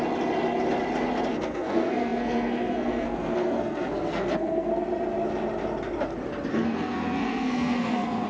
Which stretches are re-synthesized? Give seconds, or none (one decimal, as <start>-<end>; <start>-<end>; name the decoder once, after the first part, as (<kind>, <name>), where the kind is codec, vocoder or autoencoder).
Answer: 1.3-4.7 (codec, SNAC); 6.5-8.3